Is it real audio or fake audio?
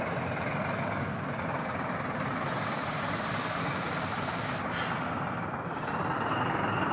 real